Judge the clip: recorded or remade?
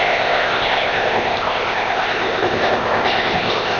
remade